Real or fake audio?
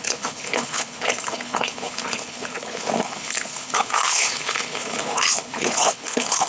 fake